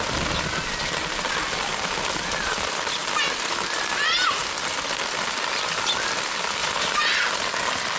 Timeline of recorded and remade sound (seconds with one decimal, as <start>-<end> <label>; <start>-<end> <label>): 0.0-6.6 recorded; 6.6-7.2 remade; 7.2-8.0 recorded